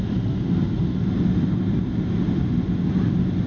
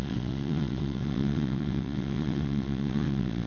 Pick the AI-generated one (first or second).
second